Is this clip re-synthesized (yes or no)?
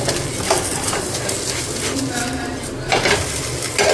no